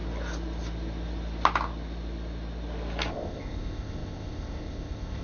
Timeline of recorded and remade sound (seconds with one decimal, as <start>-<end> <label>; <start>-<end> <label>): 0.0-3.1 recorded; 3.1-5.2 remade